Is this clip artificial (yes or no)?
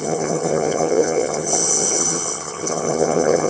yes